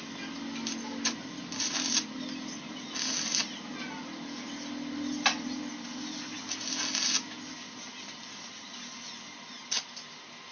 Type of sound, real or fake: real